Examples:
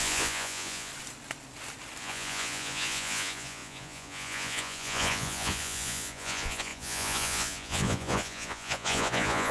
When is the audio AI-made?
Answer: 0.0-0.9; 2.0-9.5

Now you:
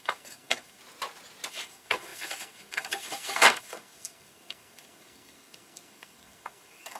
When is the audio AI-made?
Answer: 0.0-0.8; 1.5-7.0